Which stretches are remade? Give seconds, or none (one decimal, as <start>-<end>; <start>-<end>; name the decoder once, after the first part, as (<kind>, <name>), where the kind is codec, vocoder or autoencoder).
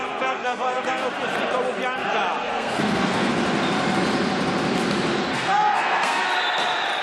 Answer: 0.0-1.0 (codec, SNAC); 2.4-3.3; 5.3-6.2